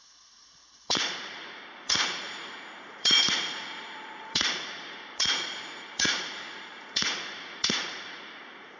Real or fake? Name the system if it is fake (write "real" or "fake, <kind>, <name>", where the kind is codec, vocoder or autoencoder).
fake, vocoder, Vocos